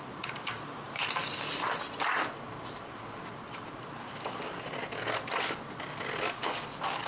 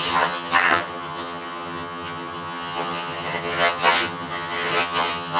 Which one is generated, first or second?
second